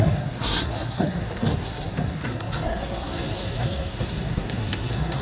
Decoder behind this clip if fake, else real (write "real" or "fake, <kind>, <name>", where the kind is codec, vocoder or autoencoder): fake, codec, SNAC